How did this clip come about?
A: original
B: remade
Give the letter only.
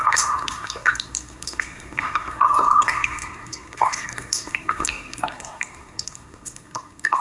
B